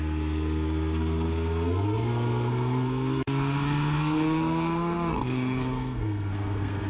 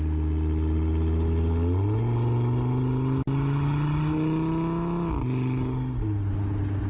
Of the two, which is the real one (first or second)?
second